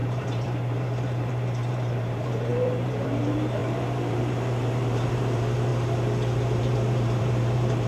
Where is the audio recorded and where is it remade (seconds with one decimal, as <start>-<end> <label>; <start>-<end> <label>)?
0.0-5.7 remade; 5.7-6.6 recorded; 6.6-7.9 remade